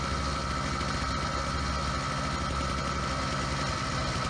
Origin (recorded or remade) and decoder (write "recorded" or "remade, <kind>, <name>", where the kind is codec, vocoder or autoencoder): recorded